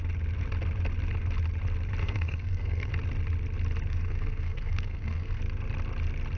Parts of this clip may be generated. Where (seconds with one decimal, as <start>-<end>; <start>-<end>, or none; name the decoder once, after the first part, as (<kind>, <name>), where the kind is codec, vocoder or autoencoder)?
2.0-2.9 (codec, SNAC); 3.9-5.4